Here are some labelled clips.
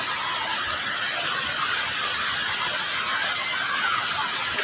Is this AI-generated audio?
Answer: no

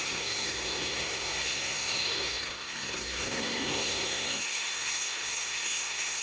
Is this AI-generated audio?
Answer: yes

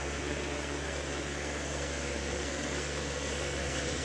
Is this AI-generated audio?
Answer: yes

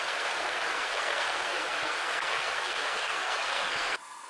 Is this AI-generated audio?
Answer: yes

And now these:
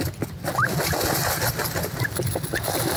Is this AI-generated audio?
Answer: no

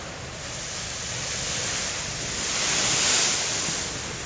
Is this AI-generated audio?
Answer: no